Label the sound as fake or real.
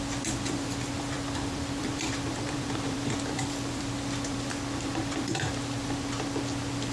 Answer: fake